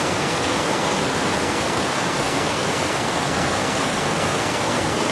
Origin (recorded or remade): remade